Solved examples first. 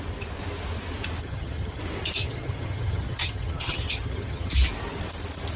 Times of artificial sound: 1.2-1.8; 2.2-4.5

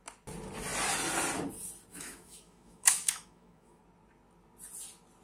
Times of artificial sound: 1.9-3.8

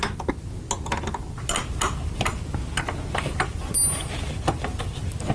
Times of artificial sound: none

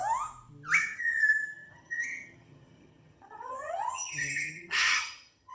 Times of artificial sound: 0.8-5.5

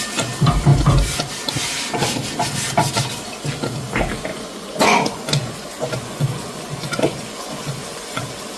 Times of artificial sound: 4.3-8.2

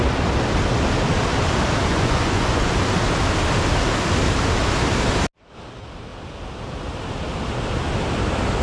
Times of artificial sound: 1.9-2.7

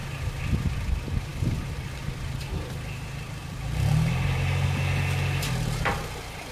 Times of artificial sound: 1.3-2.4; 3.4-4.8

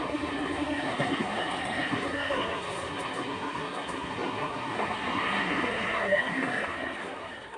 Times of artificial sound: 0.0-7.6